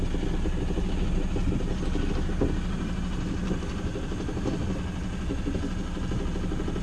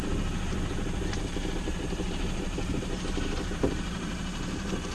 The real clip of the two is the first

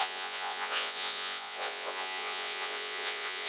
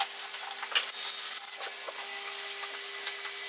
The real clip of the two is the second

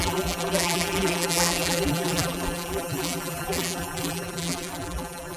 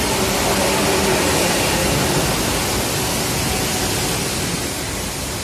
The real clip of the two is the second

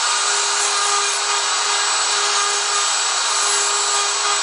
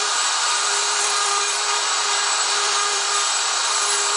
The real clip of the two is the first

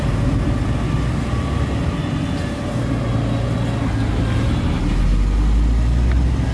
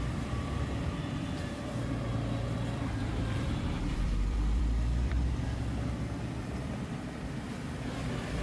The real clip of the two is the first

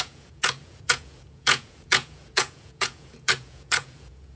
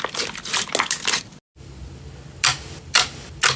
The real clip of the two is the second